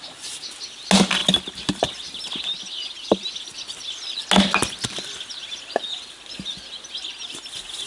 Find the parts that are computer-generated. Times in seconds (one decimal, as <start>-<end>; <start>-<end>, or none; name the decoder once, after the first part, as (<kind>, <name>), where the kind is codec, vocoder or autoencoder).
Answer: none